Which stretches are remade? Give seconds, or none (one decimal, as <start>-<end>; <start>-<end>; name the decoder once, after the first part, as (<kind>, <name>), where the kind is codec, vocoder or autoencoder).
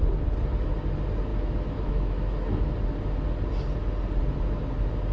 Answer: 1.3-2.6 (autoencoder, DAC-VAE)